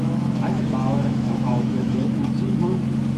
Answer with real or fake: fake